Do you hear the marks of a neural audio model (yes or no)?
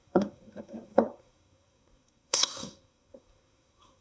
yes